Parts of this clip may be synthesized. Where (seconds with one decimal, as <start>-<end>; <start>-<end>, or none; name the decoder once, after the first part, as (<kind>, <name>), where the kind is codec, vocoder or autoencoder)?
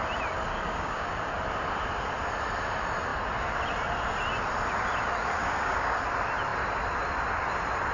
0.5-1.1 (codec, DAC); 5.4-6.0